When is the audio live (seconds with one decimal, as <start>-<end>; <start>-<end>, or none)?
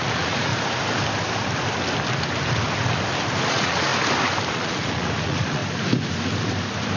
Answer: 0.5-3.5; 3.9-4.5; 5.6-7.0